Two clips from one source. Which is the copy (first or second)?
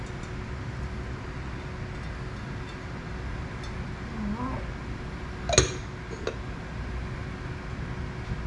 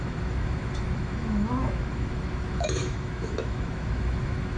second